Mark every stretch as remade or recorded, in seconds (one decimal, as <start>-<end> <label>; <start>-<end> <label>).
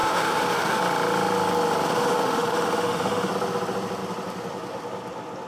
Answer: 0.0-0.8 remade; 0.8-1.9 recorded; 1.9-3.3 remade; 3.3-5.5 recorded